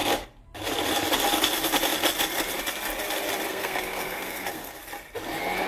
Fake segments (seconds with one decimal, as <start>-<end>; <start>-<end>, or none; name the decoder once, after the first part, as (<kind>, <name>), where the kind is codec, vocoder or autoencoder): 3.5-4.8 (codec, SNAC)